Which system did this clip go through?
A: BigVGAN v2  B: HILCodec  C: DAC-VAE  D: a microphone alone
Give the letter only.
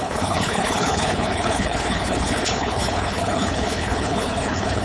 B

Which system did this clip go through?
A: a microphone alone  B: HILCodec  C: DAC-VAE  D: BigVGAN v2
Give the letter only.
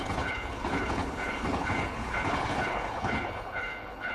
B